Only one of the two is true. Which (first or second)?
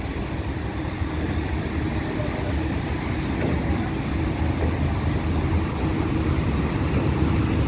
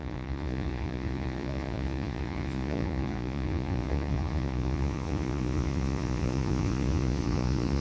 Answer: first